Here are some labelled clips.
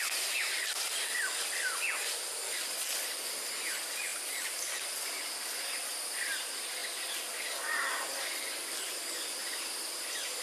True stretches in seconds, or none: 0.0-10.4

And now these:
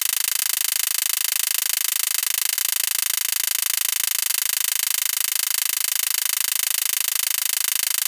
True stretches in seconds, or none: 0.0-8.1

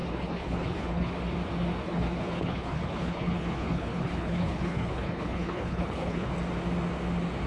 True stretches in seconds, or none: 1.1-1.8; 6.3-7.5

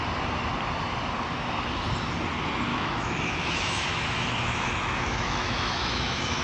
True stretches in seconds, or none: 0.0-2.7

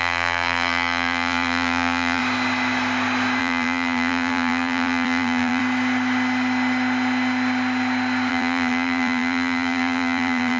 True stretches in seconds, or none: 2.2-3.4; 5.6-8.3

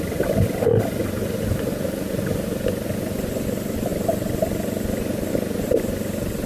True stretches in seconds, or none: 3.9-5.3